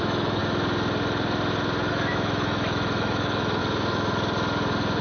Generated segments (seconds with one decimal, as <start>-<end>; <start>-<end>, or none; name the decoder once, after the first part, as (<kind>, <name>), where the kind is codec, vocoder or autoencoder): 0.0-0.4 (autoencoder, DAC-VAE); 1.9-3.6